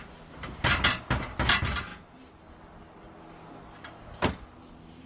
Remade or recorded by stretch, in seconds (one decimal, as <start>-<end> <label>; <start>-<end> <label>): 0.0-5.1 recorded